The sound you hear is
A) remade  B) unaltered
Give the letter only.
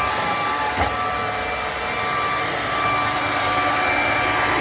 B